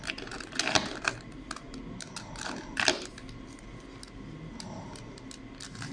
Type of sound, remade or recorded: recorded